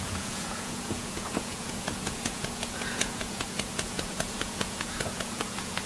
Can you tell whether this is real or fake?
fake